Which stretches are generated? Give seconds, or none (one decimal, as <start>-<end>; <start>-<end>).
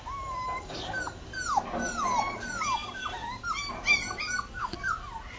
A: none